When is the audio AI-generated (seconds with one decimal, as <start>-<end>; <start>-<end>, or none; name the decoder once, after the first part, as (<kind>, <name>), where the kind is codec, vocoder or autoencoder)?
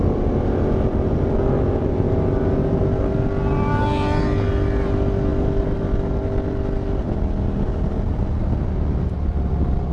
none